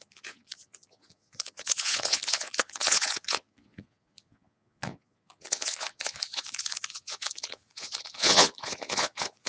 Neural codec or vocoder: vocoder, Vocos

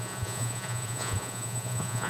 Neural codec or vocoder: vocoder, Vocos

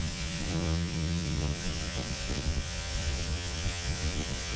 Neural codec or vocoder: vocoder, Vocos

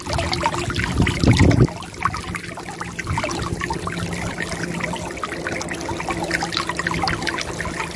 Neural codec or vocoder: none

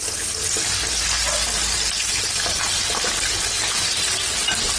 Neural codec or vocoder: none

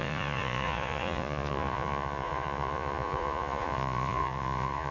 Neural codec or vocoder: vocoder, Vocos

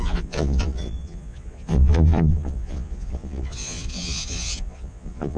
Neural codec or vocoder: vocoder, Vocos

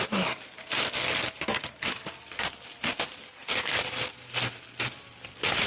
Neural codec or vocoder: none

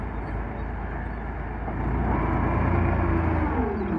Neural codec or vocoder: none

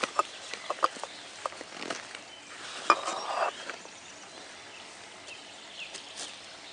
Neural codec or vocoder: none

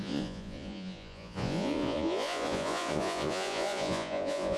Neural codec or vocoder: vocoder, Vocos